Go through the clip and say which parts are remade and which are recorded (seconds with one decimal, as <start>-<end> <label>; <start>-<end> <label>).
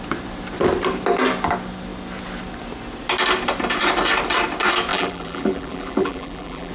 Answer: 0.0-4.9 recorded; 4.9-6.7 remade